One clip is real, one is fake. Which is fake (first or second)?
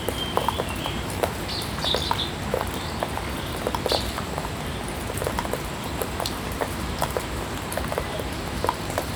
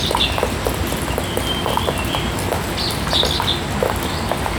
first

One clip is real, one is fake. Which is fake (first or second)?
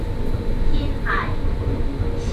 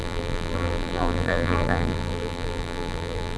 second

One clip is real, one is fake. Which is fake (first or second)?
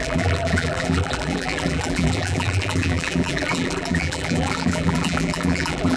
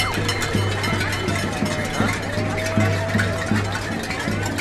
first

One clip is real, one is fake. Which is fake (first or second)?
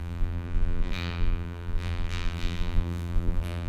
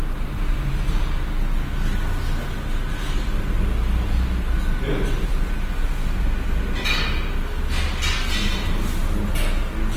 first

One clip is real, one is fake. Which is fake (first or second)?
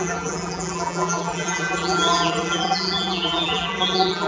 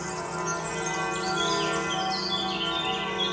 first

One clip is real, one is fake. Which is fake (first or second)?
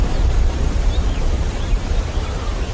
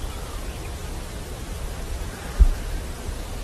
first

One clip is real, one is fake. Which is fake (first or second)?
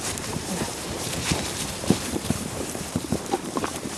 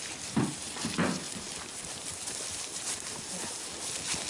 first